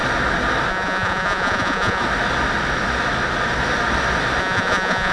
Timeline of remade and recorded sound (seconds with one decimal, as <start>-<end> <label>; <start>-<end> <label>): 0.0-0.7 recorded; 0.7-2.0 remade; 2.0-4.4 recorded; 4.4-5.1 remade